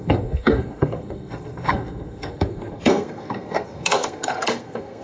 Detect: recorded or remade remade